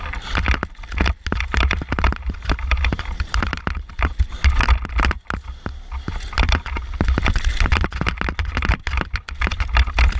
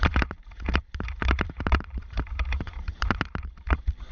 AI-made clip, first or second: second